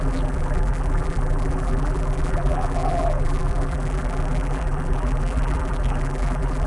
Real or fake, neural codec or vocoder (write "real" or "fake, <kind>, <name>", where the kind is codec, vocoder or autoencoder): fake, vocoder, BigVGAN v2